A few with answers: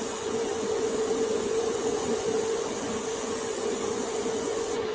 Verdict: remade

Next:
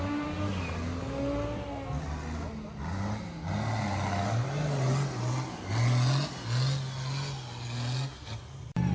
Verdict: recorded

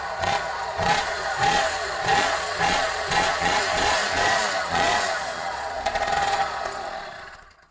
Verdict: remade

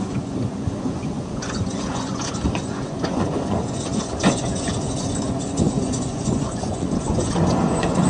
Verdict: remade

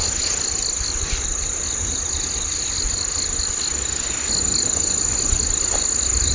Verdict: recorded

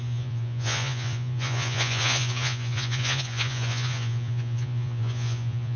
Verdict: remade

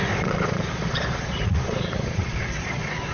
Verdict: remade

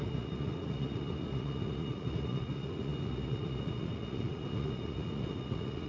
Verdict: remade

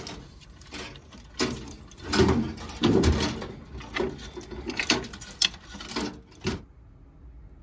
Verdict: recorded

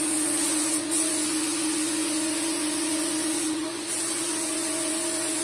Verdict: remade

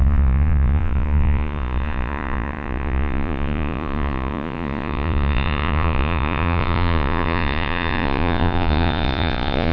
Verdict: remade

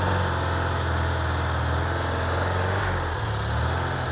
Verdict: recorded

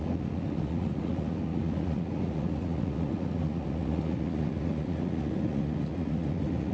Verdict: remade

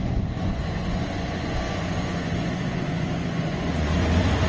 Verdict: remade